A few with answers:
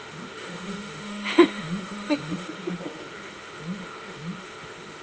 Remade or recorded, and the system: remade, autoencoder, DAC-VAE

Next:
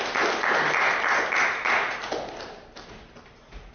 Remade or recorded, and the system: recorded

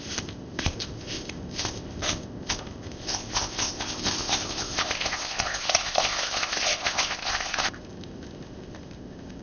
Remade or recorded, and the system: remade, codec, ZipCodec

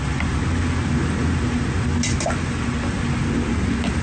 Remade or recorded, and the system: recorded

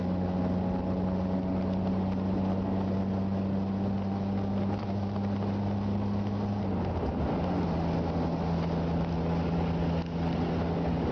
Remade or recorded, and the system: recorded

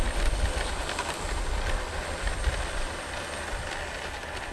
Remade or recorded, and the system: recorded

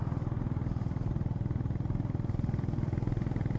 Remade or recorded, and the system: recorded